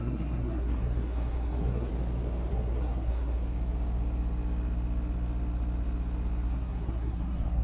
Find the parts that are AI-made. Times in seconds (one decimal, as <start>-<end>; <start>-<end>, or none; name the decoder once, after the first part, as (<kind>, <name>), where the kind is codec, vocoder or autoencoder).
0.0-1.9 (codec, SNAC); 2.5-3.4; 6.5-7.6